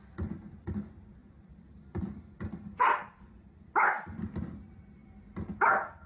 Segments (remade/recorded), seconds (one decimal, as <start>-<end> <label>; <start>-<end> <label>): 0.0-1.2 recorded; 1.2-4.4 remade; 4.4-6.1 recorded